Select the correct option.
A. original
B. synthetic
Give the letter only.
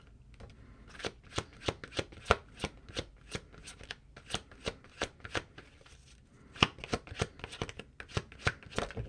A